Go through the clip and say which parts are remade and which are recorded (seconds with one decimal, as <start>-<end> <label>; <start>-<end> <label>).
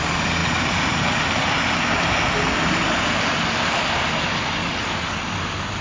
0.0-4.6 recorded; 4.6-5.2 remade; 5.2-5.8 recorded